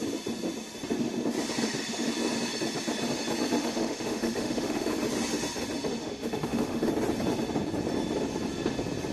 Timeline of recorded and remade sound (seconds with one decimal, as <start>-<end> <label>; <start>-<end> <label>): 0.0-3.6 recorded; 3.6-4.9 remade; 4.9-6.0 recorded; 6.0-6.9 remade; 6.9-9.1 recorded